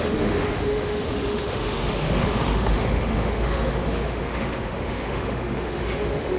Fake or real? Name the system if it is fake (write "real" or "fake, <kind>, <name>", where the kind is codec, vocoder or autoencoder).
fake, autoencoder, DAC-VAE